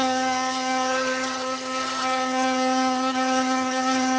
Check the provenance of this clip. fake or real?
fake